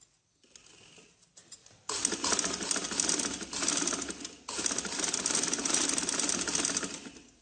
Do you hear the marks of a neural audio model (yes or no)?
no